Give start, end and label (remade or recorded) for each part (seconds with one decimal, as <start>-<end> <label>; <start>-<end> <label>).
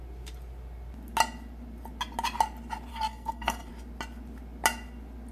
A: 0.0-2.9 recorded; 2.9-3.7 remade; 3.7-5.3 recorded